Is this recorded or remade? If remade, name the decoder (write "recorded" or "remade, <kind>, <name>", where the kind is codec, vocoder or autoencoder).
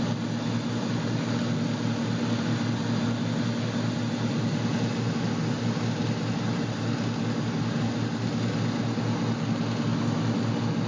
recorded